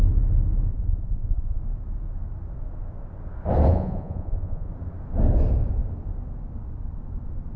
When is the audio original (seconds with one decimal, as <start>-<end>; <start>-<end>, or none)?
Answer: 0.0-0.7; 1.6-3.7; 4.7-7.6

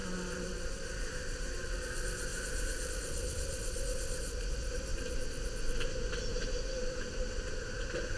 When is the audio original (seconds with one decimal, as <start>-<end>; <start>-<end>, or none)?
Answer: 1.7-2.3; 2.9-6.3; 7.4-8.2

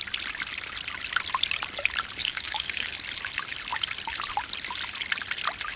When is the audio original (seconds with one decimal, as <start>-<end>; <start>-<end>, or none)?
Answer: 0.0-2.2; 2.9-5.8

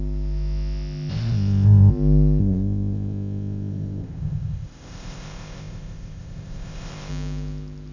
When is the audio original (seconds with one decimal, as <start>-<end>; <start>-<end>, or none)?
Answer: 0.0-1.1; 1.9-2.4; 7.1-7.9